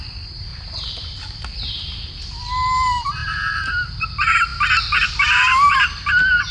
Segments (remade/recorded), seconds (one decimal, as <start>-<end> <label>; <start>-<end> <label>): 0.0-0.5 recorded; 0.5-2.3 remade; 2.3-3.2 recorded; 3.2-4.0 remade; 4.0-6.5 recorded